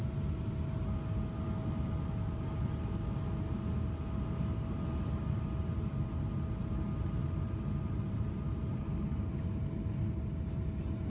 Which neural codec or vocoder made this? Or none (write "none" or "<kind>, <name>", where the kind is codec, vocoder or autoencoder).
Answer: none